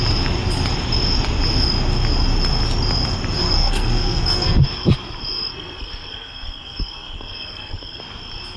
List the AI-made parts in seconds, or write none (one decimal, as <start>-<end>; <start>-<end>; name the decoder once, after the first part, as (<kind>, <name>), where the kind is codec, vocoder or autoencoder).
3.4-4.6 (codec, SNAC); 5.5-8.0